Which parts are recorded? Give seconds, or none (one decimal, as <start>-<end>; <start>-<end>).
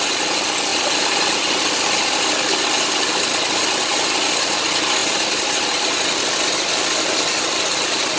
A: 0.0-8.2